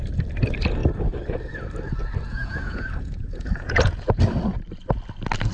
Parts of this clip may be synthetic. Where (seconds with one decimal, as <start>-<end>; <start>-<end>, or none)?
2.3-4.2